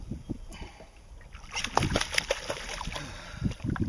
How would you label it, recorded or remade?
recorded